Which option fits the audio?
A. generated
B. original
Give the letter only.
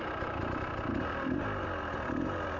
B